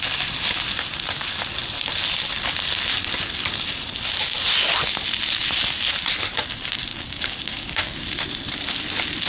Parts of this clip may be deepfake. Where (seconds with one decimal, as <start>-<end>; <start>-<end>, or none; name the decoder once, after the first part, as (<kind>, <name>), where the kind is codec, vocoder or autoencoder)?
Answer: 6.9-8.1 (codec, DAC)